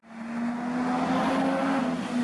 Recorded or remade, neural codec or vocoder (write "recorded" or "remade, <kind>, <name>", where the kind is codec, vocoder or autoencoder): recorded